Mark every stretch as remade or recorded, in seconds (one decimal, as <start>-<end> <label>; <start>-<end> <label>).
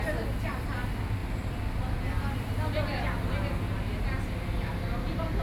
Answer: 0.0-5.4 recorded